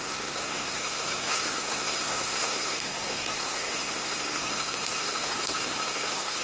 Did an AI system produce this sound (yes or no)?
yes